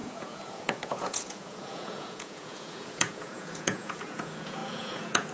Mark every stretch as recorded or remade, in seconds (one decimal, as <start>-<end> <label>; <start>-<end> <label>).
0.0-5.3 remade